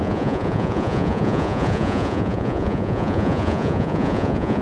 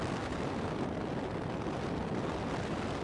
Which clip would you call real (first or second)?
second